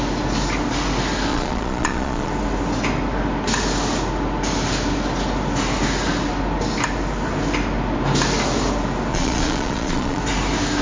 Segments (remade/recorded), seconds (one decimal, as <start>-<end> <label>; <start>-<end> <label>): 0.0-1.3 recorded; 1.3-2.3 remade; 2.3-9.1 recorded; 9.1-10.2 remade; 10.2-10.8 recorded